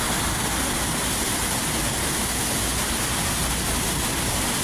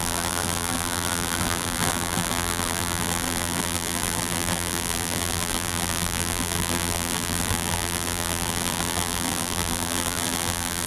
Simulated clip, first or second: second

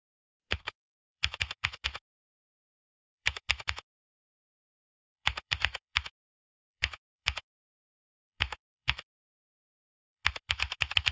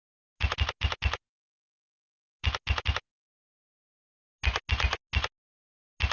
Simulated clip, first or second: first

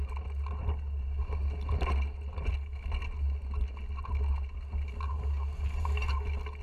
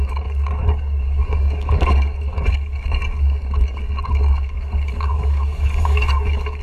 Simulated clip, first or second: second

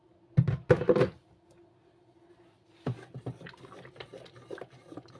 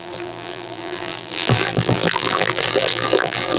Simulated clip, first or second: second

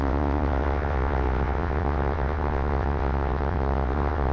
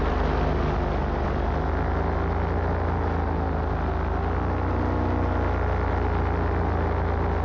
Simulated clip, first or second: first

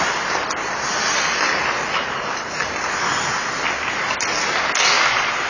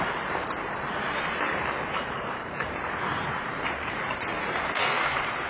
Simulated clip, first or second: second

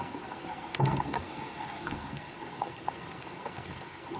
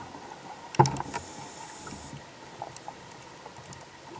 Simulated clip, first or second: first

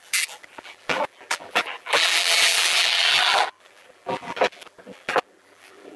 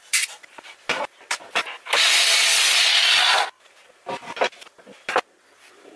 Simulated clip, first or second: first